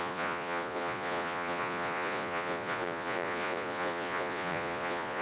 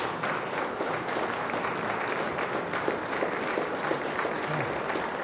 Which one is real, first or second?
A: second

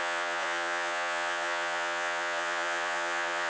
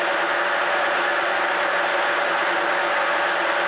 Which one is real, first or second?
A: second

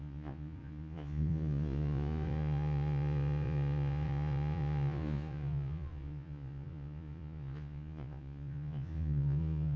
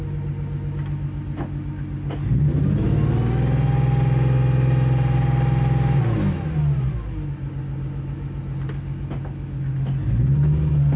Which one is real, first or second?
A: second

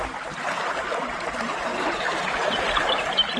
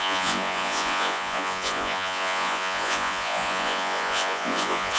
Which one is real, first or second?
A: first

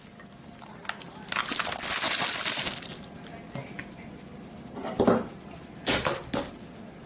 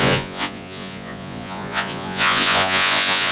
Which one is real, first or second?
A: first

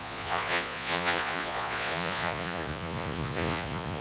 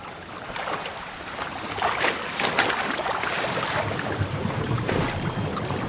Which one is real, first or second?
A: second